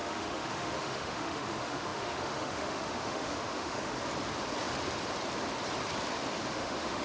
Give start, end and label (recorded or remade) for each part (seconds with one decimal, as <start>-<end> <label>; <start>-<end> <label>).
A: 0.0-3.9 remade; 3.9-6.5 recorded; 6.5-7.0 remade